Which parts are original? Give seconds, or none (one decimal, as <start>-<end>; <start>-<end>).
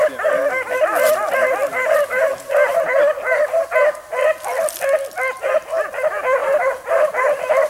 0.0-6.4; 7.1-7.7